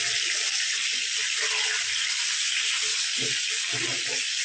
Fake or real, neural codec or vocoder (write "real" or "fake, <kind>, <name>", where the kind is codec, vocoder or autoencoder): real